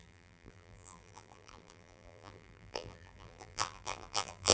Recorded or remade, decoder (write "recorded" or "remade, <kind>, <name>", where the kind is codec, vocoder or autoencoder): remade, vocoder, BigVGAN v2